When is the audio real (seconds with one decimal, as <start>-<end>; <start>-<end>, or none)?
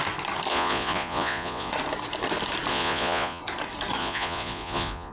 0.0-0.5; 1.7-2.7; 3.4-4.0